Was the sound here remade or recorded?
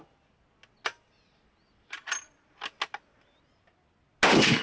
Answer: recorded